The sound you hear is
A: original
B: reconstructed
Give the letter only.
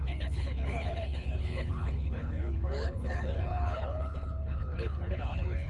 B